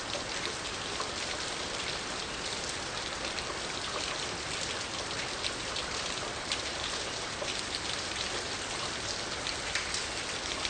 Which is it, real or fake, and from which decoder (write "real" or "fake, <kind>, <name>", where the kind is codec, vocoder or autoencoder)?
real